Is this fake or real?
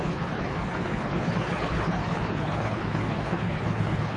fake